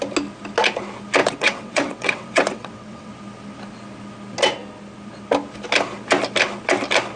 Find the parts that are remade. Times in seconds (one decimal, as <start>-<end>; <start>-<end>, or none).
1.2-3.1